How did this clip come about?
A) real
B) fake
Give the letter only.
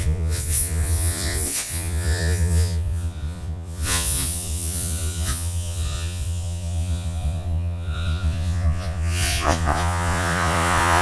B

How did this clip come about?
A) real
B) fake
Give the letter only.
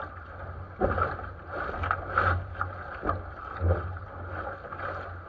A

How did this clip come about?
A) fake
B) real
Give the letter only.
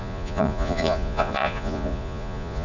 A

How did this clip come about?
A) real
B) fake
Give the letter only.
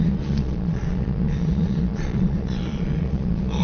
B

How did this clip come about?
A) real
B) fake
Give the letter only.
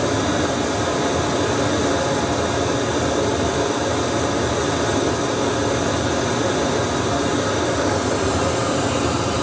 A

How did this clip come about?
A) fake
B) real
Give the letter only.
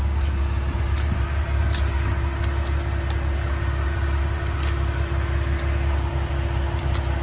B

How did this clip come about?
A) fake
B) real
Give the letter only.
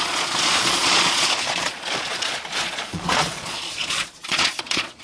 A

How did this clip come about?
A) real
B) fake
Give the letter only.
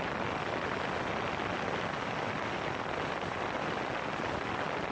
A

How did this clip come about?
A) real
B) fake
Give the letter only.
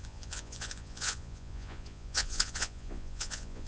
B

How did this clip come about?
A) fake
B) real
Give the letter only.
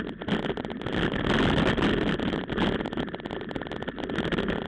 B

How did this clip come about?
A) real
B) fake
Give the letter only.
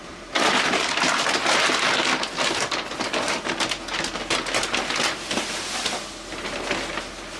A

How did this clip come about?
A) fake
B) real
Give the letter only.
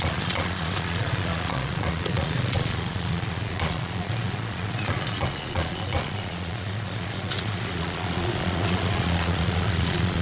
A